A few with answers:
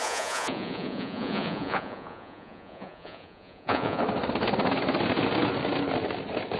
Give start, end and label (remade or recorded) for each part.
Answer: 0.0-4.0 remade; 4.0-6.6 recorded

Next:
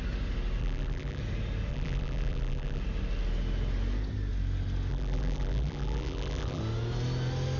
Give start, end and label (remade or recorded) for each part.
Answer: 0.0-0.6 recorded; 0.6-1.2 remade; 1.2-1.7 recorded; 1.7-2.8 remade; 2.8-4.9 recorded; 4.9-6.6 remade; 6.6-7.6 recorded